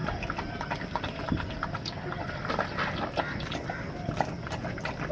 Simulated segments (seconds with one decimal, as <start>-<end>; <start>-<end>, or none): none